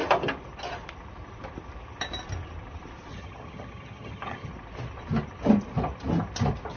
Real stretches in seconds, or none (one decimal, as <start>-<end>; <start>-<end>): 0.0-3.1; 4.5-6.8